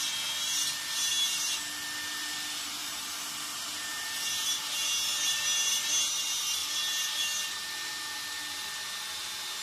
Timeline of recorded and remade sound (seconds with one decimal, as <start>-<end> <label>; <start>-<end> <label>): 0.0-2.8 recorded; 2.8-3.3 remade; 3.3-9.6 recorded